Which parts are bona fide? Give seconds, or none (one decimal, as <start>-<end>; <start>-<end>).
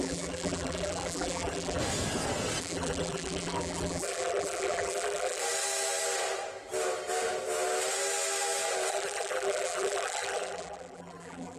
1.8-2.6; 5.4-8.9